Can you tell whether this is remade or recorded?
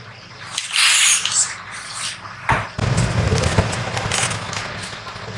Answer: recorded